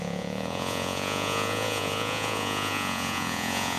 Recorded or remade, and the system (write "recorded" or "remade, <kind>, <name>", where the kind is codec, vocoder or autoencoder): remade, vocoder, Vocos